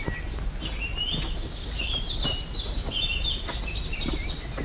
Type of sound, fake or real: real